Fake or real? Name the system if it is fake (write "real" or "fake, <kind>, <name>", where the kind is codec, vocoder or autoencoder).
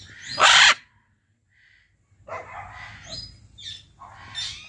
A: real